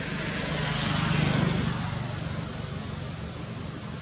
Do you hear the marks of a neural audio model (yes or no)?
no